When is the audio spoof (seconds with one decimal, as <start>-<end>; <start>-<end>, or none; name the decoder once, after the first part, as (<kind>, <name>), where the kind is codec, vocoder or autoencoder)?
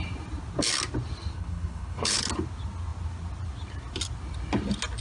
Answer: 1.3-2.2 (codec, HILCodec)